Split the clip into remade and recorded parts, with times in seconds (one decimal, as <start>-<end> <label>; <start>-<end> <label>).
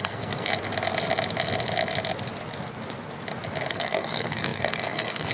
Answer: 0.0-0.5 remade; 0.5-3.7 recorded; 3.7-5.3 remade